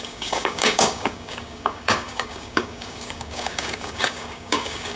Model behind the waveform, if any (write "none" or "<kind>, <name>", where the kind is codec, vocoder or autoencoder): codec, DAC